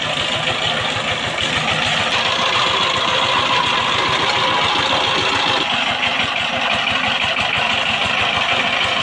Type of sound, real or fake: real